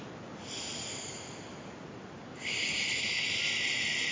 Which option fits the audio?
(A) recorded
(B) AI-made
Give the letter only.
A